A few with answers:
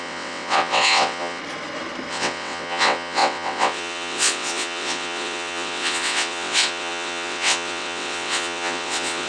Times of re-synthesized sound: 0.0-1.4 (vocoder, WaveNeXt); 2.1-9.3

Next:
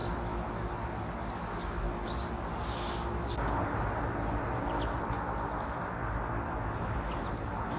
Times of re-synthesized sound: none